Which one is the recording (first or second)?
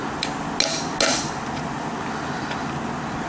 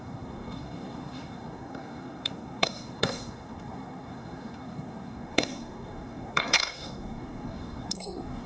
first